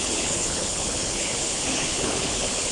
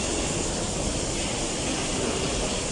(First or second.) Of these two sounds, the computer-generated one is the first